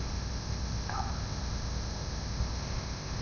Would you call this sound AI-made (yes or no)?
yes